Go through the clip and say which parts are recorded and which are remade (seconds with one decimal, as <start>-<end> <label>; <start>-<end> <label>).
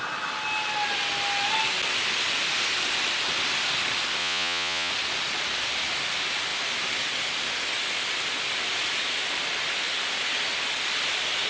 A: 0.0-4.2 recorded; 4.2-4.9 remade; 4.9-11.5 recorded